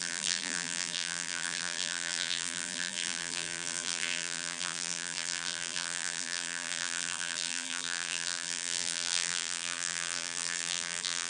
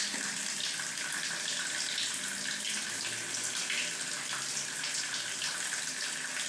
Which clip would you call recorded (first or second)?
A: second